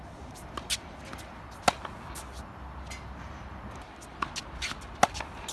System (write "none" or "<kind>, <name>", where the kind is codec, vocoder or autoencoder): none